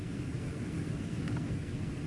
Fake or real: fake